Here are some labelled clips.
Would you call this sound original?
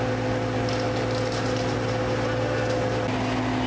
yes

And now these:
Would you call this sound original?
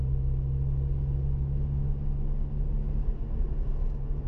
yes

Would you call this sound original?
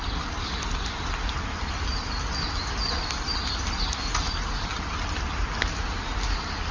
yes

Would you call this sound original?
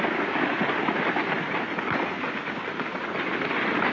yes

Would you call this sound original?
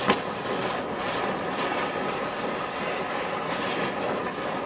yes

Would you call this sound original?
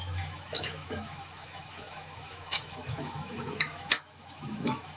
no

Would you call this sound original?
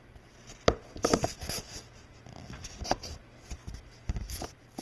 yes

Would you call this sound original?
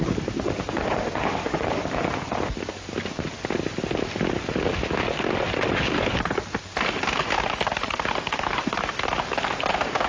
yes